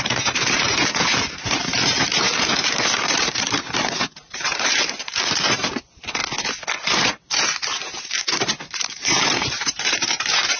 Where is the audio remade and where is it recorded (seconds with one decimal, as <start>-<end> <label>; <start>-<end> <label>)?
0.0-6.2 remade; 6.2-7.0 recorded; 7.0-10.6 remade